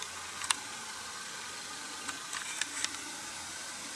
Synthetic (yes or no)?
no